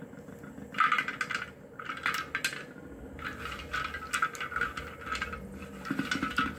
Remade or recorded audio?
recorded